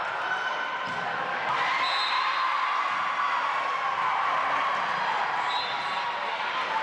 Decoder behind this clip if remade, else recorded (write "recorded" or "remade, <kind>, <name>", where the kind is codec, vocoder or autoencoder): recorded